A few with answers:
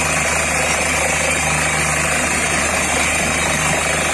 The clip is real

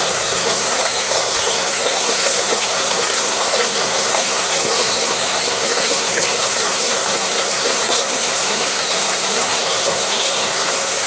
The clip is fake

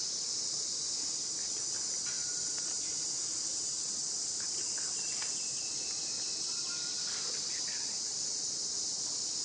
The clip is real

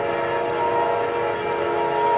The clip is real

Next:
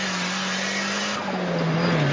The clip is real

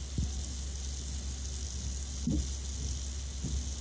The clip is real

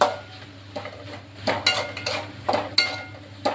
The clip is real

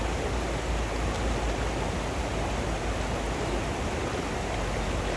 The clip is real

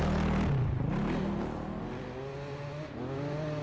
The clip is real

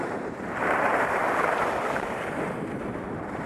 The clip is fake